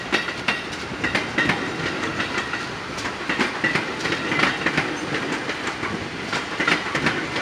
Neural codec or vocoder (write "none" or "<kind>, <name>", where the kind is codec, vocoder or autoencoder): none